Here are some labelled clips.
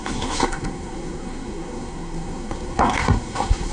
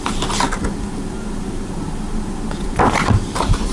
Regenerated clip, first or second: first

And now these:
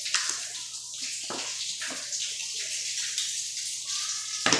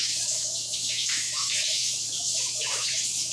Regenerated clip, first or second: second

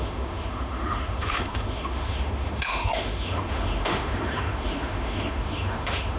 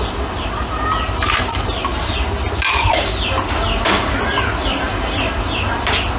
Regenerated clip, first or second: first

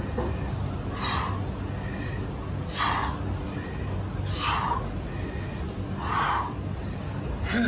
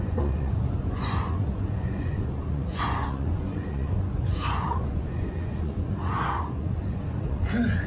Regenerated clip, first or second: second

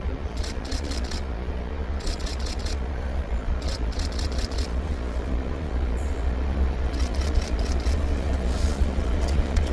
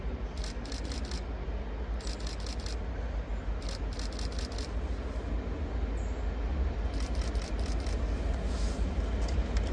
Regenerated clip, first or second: first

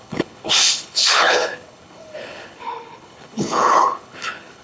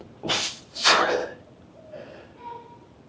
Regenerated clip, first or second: first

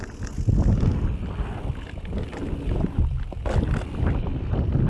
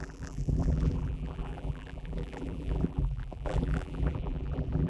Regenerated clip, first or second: second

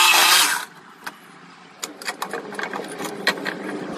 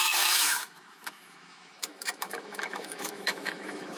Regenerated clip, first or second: second